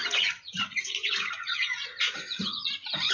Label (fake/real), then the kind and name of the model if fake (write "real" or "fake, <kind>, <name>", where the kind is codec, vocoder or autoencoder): fake, vocoder, Vocos